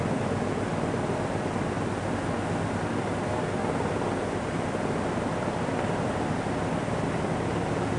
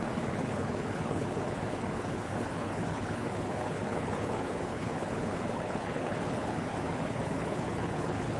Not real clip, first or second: second